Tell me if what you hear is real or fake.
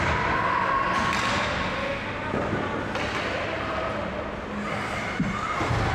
real